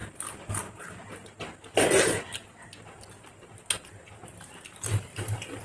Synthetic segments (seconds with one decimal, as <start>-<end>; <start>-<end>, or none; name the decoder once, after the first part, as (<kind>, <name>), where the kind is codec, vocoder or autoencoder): none